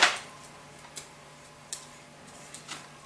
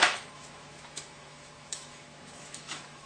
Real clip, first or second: first